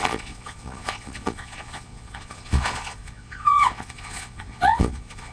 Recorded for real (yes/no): no